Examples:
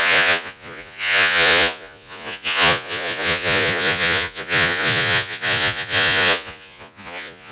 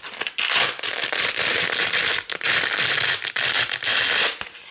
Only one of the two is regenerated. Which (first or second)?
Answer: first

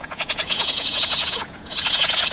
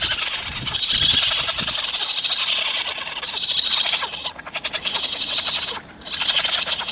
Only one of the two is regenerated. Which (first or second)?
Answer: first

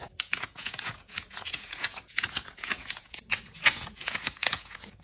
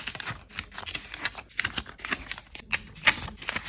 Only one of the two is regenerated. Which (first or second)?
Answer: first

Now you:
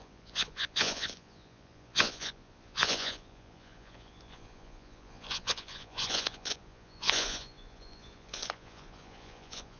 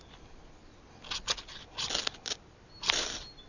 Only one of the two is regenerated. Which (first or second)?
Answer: first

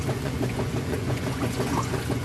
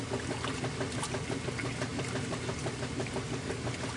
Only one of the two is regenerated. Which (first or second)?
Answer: first